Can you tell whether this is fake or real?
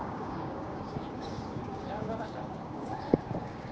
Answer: fake